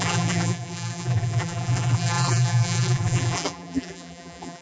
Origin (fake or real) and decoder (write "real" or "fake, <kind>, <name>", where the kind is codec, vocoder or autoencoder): fake, vocoder, BigVGAN v2